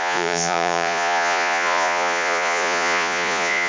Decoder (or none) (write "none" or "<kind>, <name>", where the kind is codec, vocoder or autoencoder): vocoder, Vocos